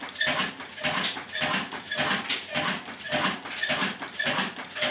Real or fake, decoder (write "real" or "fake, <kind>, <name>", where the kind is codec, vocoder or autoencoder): real